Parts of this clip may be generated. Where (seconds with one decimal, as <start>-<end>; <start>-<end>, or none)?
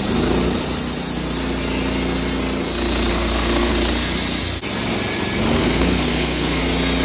3.1-3.7; 5.5-6.6